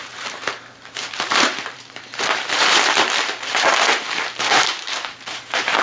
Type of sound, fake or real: fake